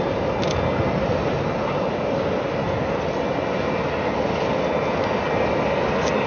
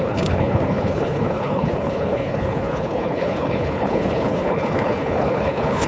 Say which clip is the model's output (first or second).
second